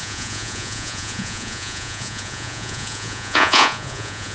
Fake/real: fake